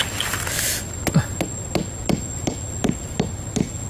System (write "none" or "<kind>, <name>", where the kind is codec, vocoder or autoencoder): none